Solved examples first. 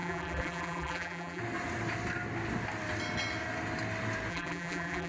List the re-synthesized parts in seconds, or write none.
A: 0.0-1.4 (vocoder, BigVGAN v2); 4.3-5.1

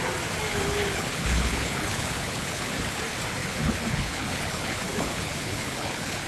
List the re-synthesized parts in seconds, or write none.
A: 0.5-3.0 (codec, HILCodec); 3.4-6.3